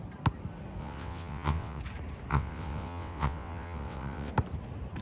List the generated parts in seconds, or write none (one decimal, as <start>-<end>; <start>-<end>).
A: 0.8-1.8; 2.3-4.3